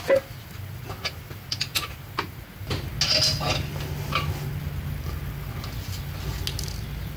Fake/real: real